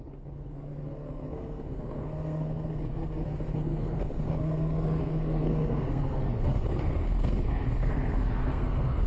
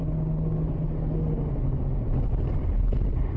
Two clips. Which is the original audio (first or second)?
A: second